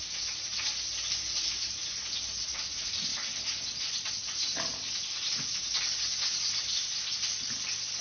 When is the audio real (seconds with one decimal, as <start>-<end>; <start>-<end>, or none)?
0.5-1.4; 1.8-2.4; 3.1-4.1; 4.5-8.0